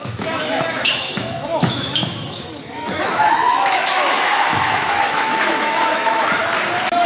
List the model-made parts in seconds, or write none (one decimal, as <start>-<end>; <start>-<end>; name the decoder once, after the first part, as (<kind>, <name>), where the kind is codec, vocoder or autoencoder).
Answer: 0.0-6.4 (autoencoder, DAC-VAE)